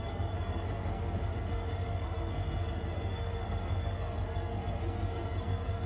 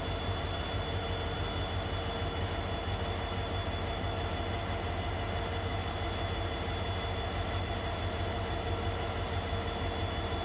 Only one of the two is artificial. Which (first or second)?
first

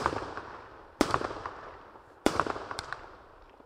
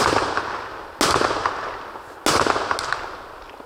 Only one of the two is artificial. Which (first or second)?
first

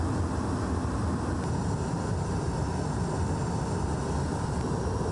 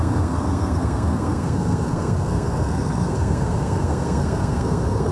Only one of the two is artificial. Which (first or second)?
second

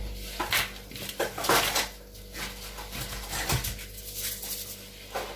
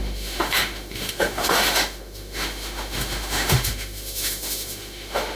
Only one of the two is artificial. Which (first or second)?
second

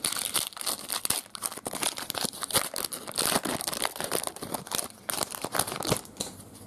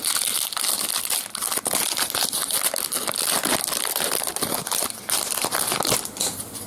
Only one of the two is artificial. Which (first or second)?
first